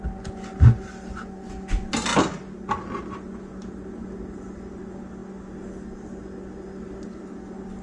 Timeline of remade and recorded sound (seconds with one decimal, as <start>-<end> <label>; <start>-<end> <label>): 0.0-7.8 recorded